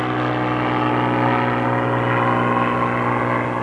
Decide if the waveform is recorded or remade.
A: recorded